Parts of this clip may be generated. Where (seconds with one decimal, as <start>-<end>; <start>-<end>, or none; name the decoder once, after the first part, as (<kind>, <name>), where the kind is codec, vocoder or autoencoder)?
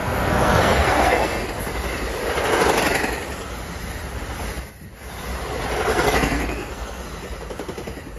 0.0-1.5 (codec, SNAC); 5.9-7.0